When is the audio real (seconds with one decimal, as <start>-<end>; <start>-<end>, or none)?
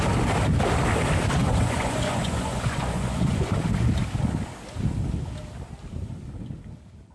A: 0.0-1.4; 3.5-7.1